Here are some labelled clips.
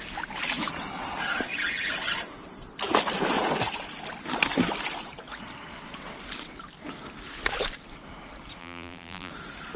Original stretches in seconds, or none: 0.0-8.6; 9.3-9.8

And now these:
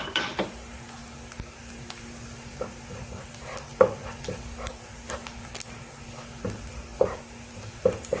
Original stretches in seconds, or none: 0.0-8.2

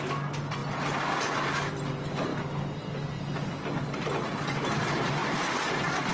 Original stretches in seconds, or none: 0.0-5.2

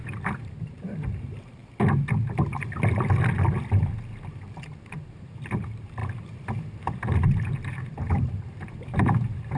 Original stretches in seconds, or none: 1.6-4.5

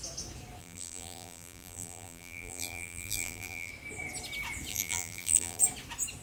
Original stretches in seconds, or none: 0.0-0.6; 3.7-4.7; 5.6-6.2